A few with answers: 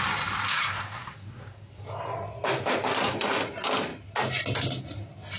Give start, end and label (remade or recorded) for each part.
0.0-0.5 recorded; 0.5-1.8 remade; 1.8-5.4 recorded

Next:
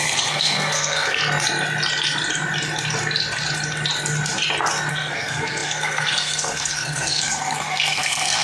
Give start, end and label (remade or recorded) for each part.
0.0-1.2 remade; 1.2-4.9 recorded; 4.9-8.4 remade

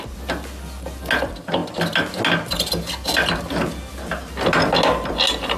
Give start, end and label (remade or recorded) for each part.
0.0-5.6 recorded

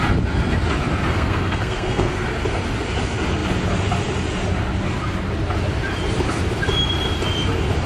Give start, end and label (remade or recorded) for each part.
0.0-1.1 recorded; 1.1-2.1 remade; 2.1-7.9 recorded

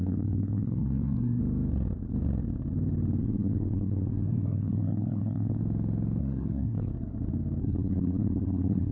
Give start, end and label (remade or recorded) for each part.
0.0-1.4 remade; 1.4-3.2 recorded; 3.2-5.6 remade; 5.6-6.2 recorded; 6.2-6.9 remade; 6.9-7.6 recorded; 7.6-8.9 remade